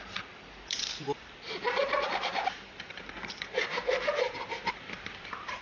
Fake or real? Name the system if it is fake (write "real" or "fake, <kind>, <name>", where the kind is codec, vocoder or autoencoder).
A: fake, vocoder, BigVGAN v2